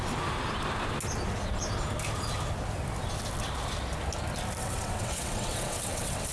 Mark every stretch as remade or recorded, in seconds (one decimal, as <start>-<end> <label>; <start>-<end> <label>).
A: 0.0-4.6 recorded; 4.6-6.3 remade